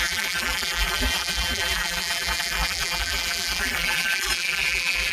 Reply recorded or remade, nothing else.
remade